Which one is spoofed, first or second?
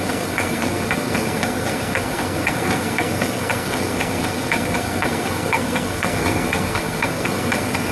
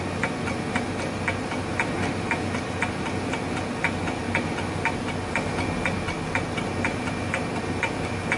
first